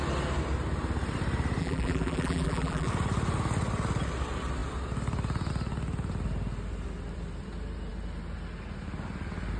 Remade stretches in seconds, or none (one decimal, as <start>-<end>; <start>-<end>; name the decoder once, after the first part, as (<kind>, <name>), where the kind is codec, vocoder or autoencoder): 1.6-2.9 (vocoder, BigVGAN v2)